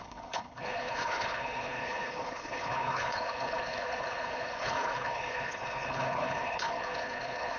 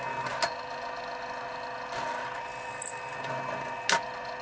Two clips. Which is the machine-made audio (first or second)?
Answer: first